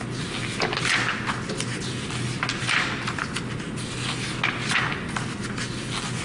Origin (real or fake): real